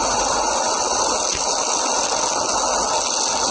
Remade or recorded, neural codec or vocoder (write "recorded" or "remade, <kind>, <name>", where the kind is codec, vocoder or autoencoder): recorded